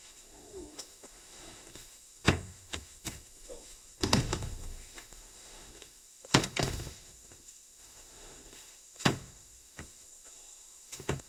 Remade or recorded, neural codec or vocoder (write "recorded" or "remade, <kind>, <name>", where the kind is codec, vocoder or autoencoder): remade, autoencoder, DAC-VAE